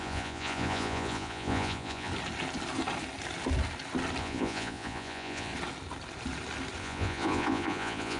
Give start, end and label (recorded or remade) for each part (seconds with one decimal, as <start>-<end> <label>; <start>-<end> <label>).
0.0-2.1 remade; 2.1-4.2 recorded; 4.2-5.5 remade; 5.5-6.8 recorded; 6.8-8.2 remade